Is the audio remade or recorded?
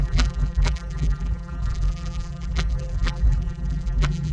remade